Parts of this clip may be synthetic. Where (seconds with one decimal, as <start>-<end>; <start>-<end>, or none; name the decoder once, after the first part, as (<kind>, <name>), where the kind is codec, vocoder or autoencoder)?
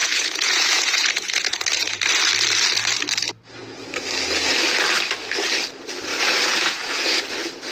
0.0-1.9 (vocoder, Vocos); 6.1-7.2